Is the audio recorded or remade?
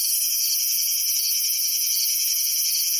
remade